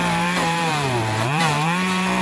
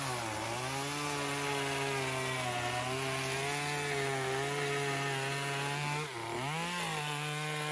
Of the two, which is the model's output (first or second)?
first